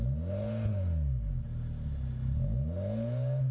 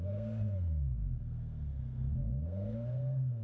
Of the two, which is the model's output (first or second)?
second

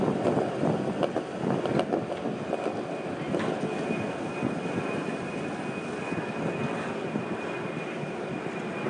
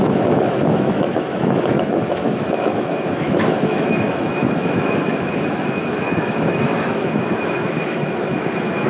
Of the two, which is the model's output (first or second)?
second